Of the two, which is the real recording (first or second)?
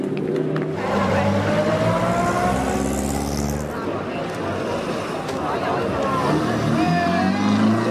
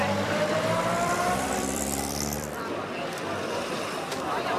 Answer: first